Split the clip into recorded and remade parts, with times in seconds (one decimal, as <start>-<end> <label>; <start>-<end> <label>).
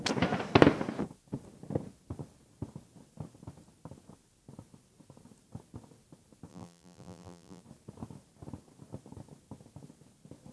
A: 0.0-6.5 recorded; 6.5-7.6 remade; 7.6-10.5 recorded